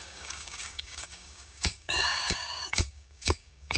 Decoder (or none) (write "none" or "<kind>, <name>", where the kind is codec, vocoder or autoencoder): codec, DAC